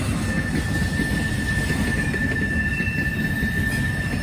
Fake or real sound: real